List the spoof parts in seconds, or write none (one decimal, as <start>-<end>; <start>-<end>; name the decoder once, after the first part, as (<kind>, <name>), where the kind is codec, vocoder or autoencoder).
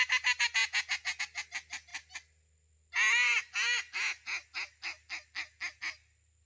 none